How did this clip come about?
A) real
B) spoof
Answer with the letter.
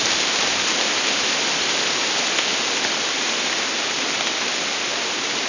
A